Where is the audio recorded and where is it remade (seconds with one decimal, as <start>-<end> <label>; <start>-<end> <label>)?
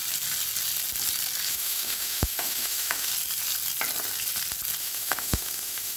0.0-1.5 recorded; 1.5-3.1 remade; 3.1-4.8 recorded; 4.8-6.0 remade